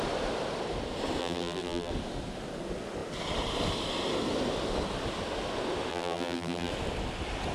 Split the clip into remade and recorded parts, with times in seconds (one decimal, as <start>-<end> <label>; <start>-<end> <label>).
0.0-1.2 recorded; 1.2-1.9 remade; 1.9-5.9 recorded; 5.9-6.7 remade; 6.7-7.5 recorded